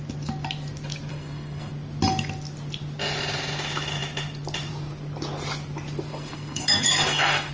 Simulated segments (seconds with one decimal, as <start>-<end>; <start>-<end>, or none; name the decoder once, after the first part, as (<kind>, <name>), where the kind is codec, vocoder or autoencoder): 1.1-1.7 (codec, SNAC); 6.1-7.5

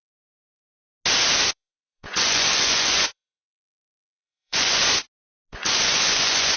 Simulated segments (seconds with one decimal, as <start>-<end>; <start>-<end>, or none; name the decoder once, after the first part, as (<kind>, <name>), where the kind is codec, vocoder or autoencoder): 0.0-0.6 (vocoder, Vocos); 1.5-4.8; 5.5-6.6

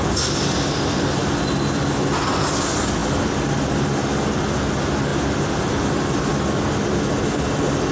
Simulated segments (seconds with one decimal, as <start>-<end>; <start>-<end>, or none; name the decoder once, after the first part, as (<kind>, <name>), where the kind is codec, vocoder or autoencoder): none